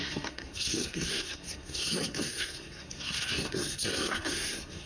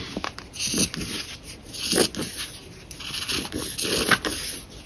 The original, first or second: second